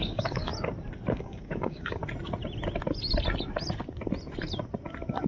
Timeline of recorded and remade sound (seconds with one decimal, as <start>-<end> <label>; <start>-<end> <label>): 0.0-0.5 remade; 0.5-1.1 recorded; 1.1-2.0 remade; 2.0-5.3 recorded